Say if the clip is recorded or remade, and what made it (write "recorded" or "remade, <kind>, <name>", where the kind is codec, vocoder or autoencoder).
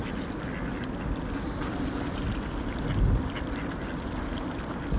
recorded